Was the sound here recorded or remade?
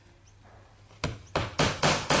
recorded